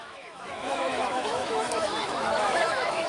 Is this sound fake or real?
fake